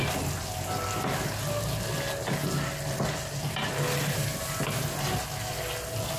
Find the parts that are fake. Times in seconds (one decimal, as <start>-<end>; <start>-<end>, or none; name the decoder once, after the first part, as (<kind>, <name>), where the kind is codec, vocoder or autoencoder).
none